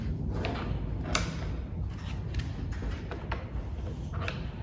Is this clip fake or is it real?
real